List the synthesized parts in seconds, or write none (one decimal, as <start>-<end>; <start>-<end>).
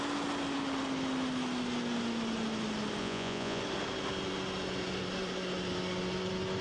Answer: 3.0-3.6